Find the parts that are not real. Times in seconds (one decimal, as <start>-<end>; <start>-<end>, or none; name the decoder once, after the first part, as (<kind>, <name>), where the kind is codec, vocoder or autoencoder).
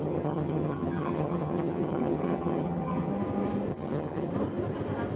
0.0-3.1 (vocoder, HiFi-GAN); 3.7-4.3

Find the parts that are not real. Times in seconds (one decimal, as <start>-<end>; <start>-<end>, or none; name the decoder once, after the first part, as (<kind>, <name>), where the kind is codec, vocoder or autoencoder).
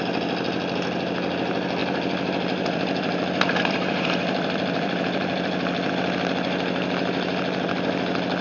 1.8-5.9 (vocoder, BigVGAN v2)